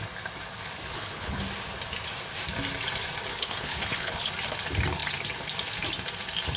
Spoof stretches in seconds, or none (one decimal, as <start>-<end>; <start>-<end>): 0.9-1.4; 3.3-4.3